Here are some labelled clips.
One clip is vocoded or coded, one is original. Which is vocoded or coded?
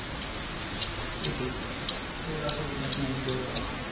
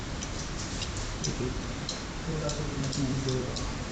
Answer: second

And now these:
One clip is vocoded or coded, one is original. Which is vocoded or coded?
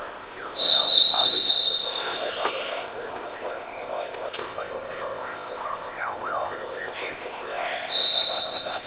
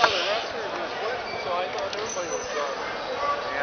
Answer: first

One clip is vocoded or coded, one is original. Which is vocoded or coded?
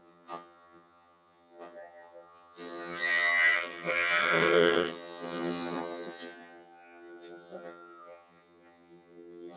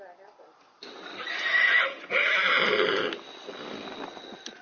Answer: first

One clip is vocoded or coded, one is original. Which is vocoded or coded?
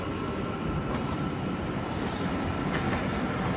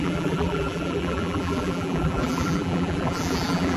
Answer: second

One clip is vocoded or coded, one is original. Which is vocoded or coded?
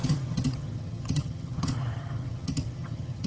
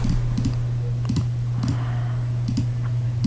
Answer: first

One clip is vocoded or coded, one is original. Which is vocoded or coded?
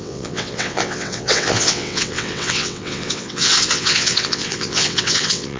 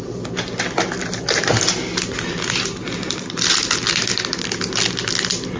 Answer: first